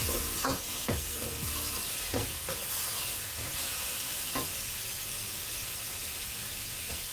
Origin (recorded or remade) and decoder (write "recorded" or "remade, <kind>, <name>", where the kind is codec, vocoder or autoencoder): remade, codec, SNAC